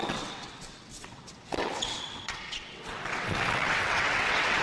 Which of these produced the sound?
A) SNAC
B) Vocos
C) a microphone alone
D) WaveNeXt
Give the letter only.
D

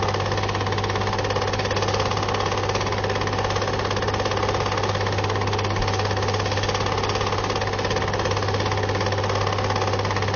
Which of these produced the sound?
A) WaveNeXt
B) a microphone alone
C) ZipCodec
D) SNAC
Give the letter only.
B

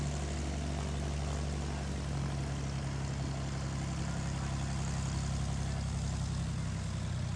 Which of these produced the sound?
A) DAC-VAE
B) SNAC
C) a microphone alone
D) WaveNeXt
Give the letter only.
C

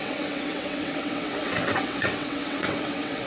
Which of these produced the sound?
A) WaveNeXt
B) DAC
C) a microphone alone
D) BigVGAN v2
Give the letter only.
A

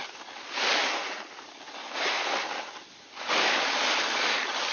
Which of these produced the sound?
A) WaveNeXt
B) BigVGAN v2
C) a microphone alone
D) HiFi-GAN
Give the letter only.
C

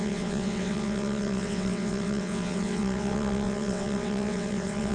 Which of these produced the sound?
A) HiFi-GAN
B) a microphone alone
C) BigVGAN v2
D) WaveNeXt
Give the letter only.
D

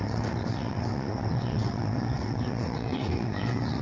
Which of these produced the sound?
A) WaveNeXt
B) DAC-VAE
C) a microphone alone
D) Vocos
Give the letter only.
A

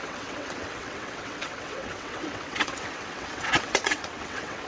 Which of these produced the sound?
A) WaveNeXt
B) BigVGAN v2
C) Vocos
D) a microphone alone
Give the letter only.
A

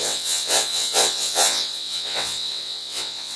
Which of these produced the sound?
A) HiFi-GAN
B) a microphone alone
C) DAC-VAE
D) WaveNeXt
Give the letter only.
D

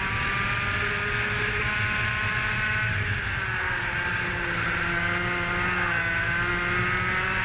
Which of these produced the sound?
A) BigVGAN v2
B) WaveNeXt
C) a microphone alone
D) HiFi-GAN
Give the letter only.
C